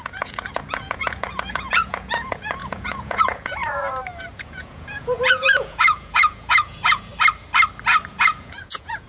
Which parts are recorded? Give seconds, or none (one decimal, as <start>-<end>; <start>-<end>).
3.6-4.3; 7.1-8.1